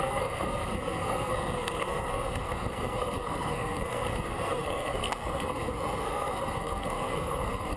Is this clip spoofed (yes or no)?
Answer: yes